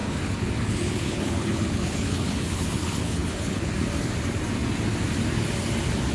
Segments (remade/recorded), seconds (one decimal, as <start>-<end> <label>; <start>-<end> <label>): 0.0-3.7 remade; 3.7-6.1 recorded